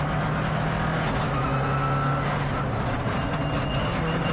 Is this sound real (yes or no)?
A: yes